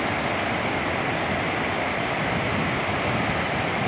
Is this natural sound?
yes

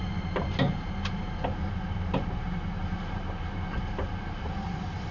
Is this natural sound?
yes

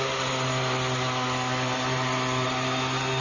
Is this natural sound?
yes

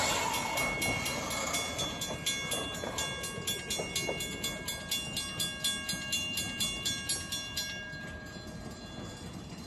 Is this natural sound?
yes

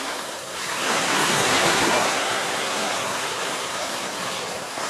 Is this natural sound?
no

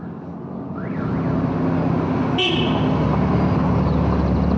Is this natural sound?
yes